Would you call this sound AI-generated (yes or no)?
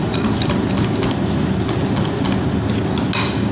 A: no